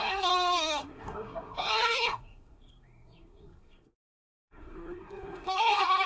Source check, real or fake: fake